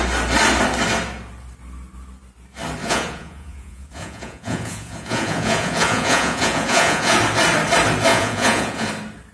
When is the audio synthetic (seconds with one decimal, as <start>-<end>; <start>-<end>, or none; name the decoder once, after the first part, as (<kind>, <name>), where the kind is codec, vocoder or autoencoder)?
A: 2.8-7.2 (vocoder, Vocos); 8.1-8.9